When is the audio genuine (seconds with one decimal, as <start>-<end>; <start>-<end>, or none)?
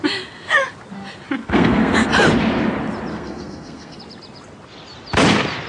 0.0-1.4; 2.1-3.1; 4.0-5.7